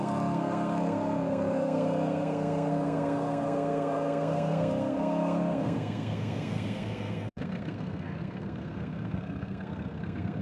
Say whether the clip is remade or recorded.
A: remade